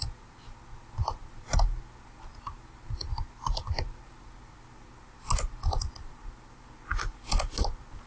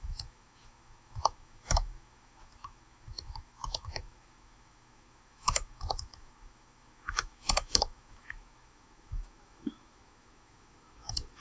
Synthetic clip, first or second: second